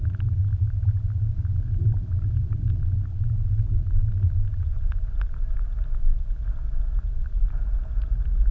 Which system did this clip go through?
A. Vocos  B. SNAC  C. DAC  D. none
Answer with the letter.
D